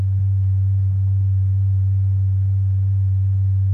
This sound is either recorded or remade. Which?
recorded